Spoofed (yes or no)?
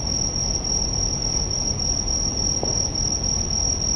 no